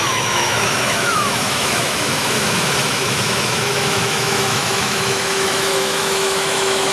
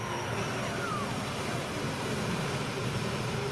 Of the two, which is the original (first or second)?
second